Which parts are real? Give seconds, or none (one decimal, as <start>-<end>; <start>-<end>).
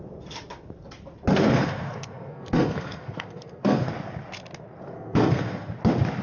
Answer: 0.0-1.3; 3.9-4.9; 5.7-6.2